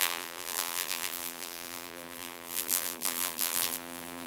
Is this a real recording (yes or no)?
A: no